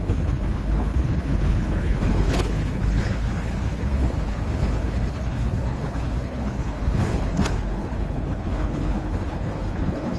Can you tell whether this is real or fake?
fake